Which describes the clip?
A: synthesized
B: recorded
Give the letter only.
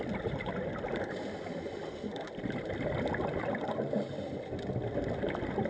B